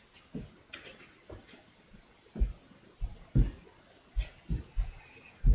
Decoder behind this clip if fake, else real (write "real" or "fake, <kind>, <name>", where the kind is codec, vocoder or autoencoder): real